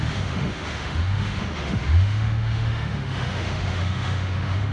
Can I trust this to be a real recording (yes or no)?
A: no